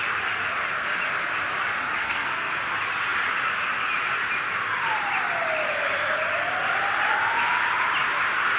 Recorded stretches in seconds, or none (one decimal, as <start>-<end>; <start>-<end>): 0.0-2.0; 2.5-8.6